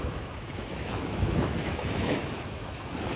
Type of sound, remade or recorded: remade